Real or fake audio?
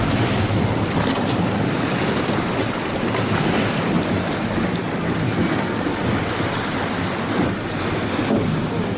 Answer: real